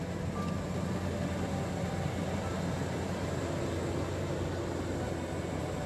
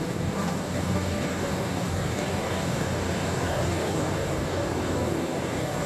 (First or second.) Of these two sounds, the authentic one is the first